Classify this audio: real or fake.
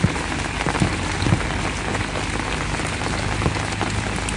real